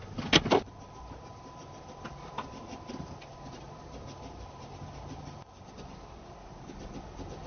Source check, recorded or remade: recorded